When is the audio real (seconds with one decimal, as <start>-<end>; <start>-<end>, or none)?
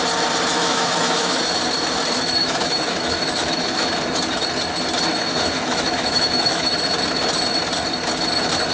0.0-0.5; 1.4-2.4; 3.9-5.1; 6.7-8.7